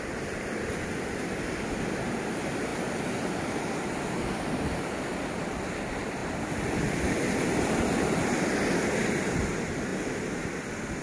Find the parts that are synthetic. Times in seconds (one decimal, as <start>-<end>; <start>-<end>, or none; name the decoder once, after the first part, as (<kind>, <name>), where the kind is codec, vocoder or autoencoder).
0.0-9.9 (vocoder, BigVGAN v2)